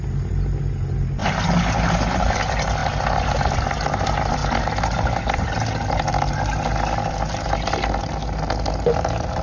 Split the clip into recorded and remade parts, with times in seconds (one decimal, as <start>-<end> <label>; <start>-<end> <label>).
0.0-9.4 recorded

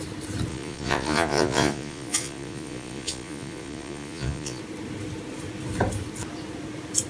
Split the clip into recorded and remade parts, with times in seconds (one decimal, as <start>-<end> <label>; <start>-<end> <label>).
0.0-0.5 recorded; 0.5-4.6 remade; 4.6-7.1 recorded

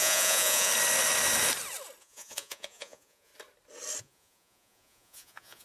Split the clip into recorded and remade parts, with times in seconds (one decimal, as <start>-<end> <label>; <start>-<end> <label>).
0.0-0.7 remade; 0.7-2.0 recorded; 2.0-3.3 remade; 3.3-4.0 recorded; 4.0-5.6 remade

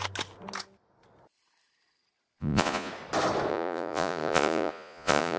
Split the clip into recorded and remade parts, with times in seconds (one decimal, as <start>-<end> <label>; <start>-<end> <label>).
0.0-2.4 recorded; 2.4-2.9 remade; 2.9-3.5 recorded; 3.5-5.4 remade